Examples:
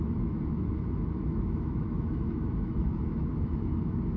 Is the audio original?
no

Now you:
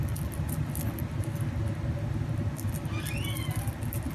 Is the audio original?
yes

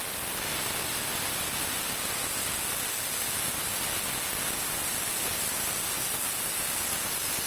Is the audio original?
yes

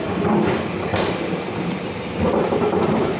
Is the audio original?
yes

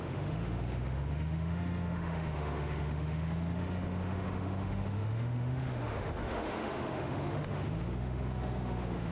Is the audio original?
no